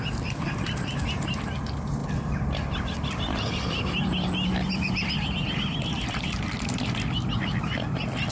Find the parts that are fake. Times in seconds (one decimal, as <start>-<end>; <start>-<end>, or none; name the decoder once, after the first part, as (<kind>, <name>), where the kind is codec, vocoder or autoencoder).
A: 2.0-6.8 (vocoder, BigVGAN v2)